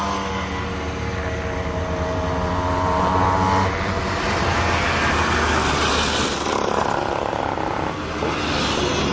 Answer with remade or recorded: recorded